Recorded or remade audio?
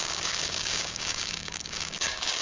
remade